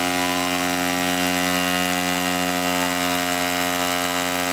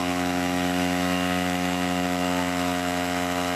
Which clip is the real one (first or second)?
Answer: first